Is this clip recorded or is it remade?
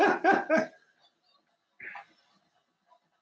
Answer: recorded